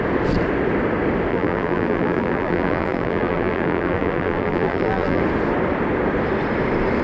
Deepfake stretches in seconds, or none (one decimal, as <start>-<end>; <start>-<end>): 1.3-5.2